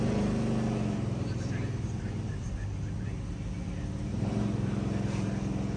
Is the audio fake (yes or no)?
no